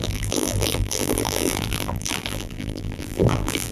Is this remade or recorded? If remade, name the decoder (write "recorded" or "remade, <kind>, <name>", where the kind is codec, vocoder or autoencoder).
remade, vocoder, BigVGAN v2